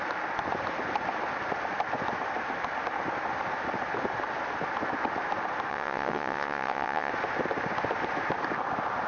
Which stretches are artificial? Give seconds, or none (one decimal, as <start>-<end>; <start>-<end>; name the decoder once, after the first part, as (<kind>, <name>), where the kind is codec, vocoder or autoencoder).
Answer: 5.7-7.1 (vocoder, WaveNeXt)